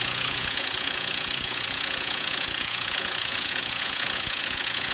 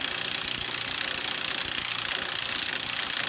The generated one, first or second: first